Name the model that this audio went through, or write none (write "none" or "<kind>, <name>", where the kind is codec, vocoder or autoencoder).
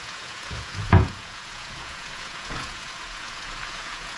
vocoder, Vocos